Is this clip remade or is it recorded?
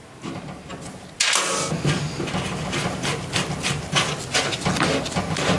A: recorded